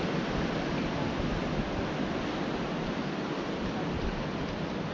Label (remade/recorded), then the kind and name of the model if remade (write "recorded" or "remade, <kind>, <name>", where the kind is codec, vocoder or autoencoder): recorded